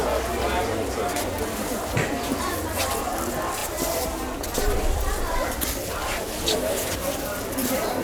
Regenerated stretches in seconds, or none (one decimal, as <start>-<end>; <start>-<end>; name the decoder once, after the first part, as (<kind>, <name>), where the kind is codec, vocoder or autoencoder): 3.6-5.8 (vocoder, BigVGAN v2); 6.5-8.0